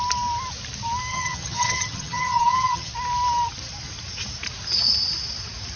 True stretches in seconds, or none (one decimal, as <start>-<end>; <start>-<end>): 0.0-1.1; 2.9-5.8